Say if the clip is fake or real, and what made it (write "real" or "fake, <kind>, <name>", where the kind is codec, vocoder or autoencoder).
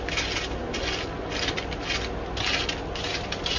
real